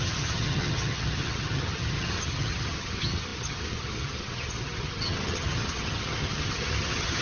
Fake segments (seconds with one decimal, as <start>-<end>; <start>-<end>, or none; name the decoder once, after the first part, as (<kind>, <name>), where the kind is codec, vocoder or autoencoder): 0.0-7.2 (vocoder, HiFi-GAN)